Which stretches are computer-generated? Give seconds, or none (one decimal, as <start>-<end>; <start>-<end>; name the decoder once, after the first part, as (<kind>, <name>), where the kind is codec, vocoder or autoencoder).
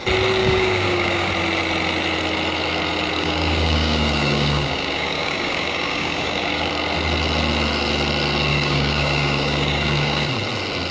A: 0.4-1.3 (codec, DAC); 3.1-6.7; 8.5-10.3